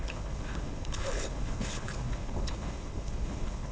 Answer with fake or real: fake